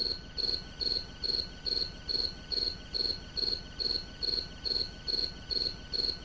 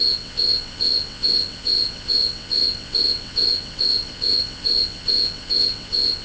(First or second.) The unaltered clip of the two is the first